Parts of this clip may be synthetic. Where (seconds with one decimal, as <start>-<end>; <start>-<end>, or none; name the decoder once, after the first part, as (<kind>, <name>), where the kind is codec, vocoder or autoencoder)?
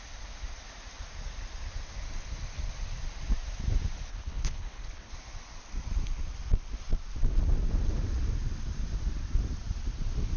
4.1-5.1 (codec, HILCodec)